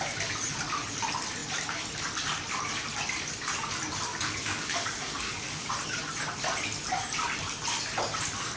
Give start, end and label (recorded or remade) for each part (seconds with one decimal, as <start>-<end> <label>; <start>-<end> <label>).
0.0-4.1 recorded; 4.1-5.7 remade; 5.7-8.6 recorded